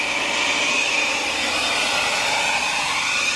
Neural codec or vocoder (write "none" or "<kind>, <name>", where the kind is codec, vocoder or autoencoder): none